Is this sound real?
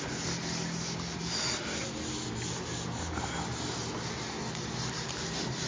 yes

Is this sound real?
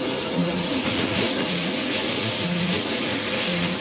no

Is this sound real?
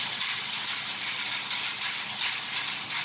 yes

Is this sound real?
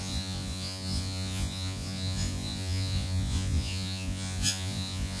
no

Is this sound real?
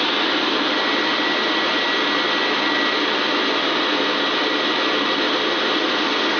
yes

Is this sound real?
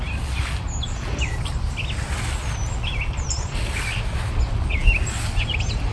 yes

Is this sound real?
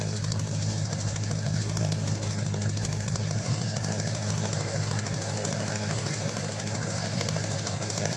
no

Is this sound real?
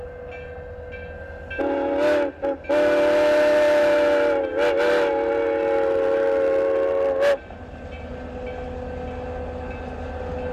yes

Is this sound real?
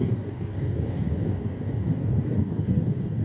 no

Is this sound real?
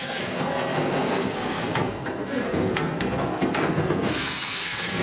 no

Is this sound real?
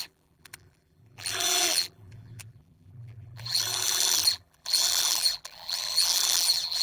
no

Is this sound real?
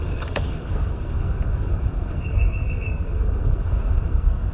no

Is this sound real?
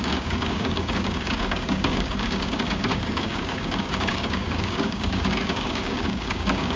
no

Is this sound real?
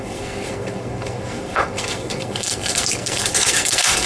no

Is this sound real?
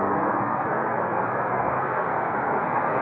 no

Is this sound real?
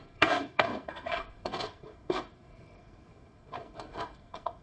no